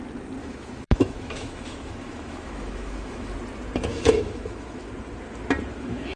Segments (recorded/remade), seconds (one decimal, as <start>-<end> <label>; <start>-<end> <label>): 0.0-0.4 recorded; 0.4-3.3 remade; 3.3-3.9 recorded; 3.9-4.9 remade; 4.9-5.7 recorded; 5.7-6.2 remade